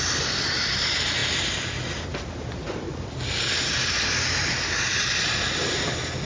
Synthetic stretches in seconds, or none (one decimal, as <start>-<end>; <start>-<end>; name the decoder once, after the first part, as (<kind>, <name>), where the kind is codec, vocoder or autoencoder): none